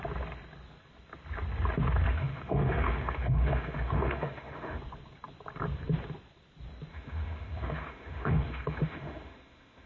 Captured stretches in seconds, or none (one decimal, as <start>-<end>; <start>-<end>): 0.0-2.1; 4.8-6.9